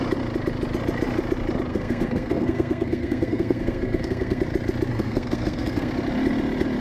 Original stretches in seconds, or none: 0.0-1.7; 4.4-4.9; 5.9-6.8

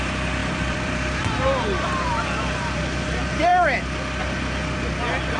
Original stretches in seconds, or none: 0.0-0.4; 2.1-5.4

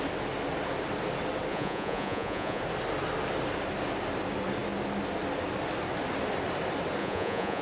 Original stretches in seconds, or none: 0.0-1.5; 2.6-7.0